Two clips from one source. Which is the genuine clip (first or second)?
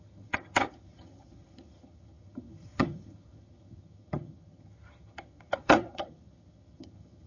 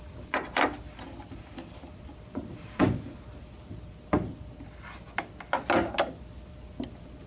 second